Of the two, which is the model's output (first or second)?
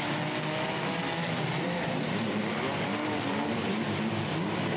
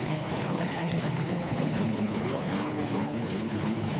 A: second